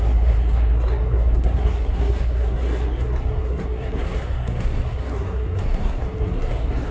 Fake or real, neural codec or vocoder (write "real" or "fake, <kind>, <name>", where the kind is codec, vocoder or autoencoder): fake, codec, SNAC